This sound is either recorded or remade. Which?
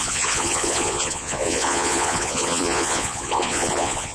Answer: remade